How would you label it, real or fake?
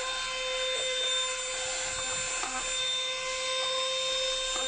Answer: real